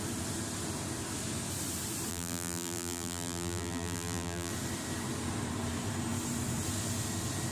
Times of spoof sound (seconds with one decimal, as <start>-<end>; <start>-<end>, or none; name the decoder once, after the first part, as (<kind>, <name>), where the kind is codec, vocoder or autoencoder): 2.1-4.5 (vocoder, BigVGAN v2)